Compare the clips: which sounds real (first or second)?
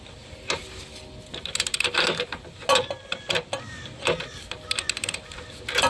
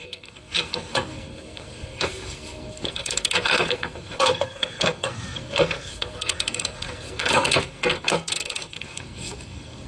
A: first